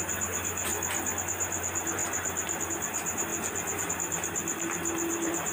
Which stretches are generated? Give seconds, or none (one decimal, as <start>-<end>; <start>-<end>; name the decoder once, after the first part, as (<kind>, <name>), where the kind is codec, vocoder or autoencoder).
0.0-0.7 (vocoder, BigVGAN v2); 1.2-3.3; 3.9-5.5